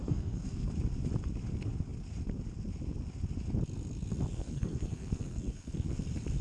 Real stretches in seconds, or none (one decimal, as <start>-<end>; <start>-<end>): 0.7-4.3; 6.0-6.4